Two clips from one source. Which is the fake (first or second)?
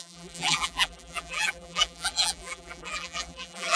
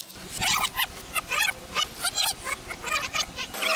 first